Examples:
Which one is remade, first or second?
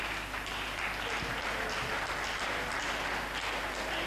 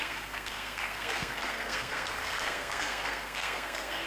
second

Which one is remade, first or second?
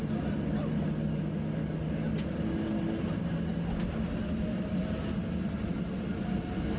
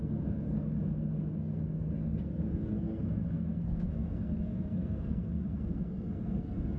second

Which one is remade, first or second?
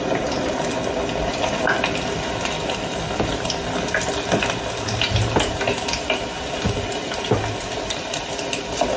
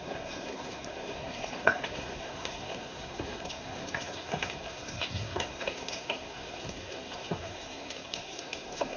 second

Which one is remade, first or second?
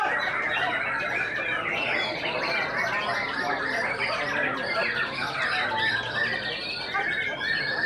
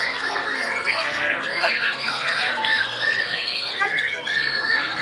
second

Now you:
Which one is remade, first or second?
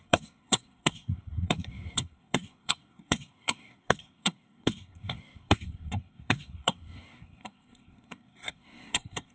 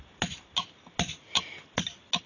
first